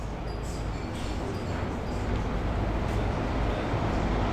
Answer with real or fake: real